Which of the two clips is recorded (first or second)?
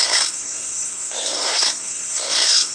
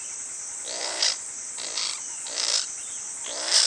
second